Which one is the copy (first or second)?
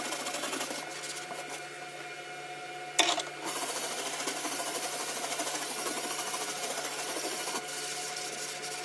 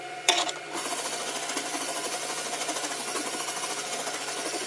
second